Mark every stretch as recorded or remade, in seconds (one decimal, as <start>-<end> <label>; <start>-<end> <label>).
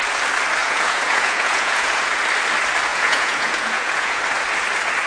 0.0-0.6 recorded; 0.6-2.2 remade; 2.2-2.9 recorded; 2.9-4.2 remade; 4.2-5.1 recorded